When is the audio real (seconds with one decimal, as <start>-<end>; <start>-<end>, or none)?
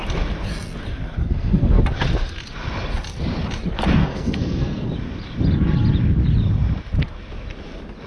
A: 0.0-1.2; 1.8-4.0; 4.9-8.1